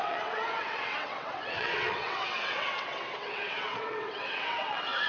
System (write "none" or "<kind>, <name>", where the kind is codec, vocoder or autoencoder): vocoder, WaveNeXt